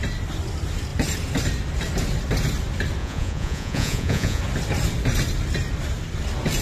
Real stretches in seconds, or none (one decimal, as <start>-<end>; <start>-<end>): 0.0-3.0; 4.4-6.6